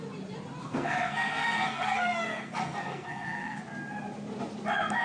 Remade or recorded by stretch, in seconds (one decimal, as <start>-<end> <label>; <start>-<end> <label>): 0.0-0.6 recorded; 0.6-3.6 remade; 3.6-5.0 recorded